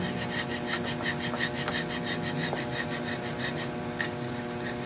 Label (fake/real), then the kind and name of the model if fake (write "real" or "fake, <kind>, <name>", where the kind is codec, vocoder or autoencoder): real